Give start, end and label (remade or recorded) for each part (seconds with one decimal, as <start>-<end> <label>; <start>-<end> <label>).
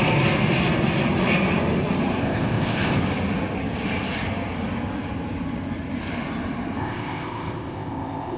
0.0-2.2 recorded; 2.2-3.0 remade; 3.0-6.8 recorded; 6.8-8.4 remade